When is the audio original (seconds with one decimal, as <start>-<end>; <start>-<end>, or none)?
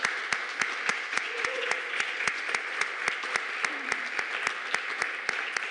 0.0-0.9; 3.0-5.7